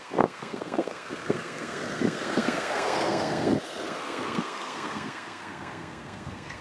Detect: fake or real fake